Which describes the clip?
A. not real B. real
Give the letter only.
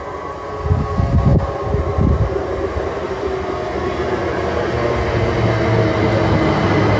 B